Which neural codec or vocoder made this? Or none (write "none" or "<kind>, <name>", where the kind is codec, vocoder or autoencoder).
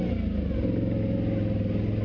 none